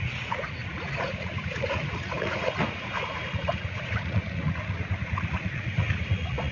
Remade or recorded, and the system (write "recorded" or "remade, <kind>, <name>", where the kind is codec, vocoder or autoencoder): remade, vocoder, Vocos